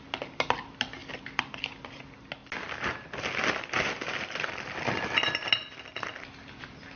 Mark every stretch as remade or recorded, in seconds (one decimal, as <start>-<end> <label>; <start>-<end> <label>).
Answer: 0.0-7.0 recorded